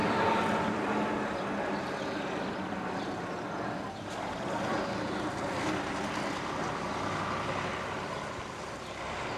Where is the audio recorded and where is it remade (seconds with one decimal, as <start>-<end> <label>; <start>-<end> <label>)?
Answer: 0.0-3.9 remade; 3.9-9.4 recorded